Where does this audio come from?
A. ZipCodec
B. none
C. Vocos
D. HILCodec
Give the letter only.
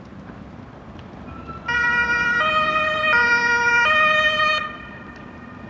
B